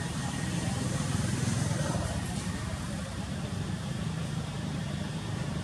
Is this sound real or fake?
fake